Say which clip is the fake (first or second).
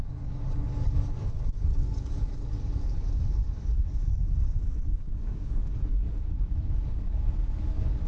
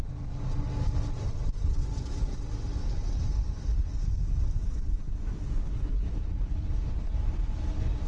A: first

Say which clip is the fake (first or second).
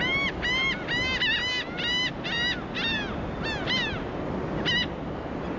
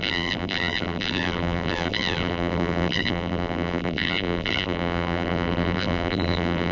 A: second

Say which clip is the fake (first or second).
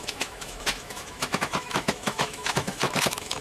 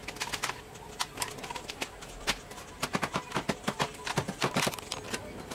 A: first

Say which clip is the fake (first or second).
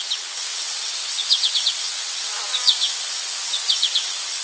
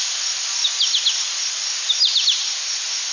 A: first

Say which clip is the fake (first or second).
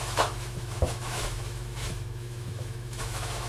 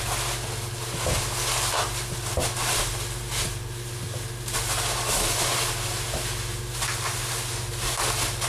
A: first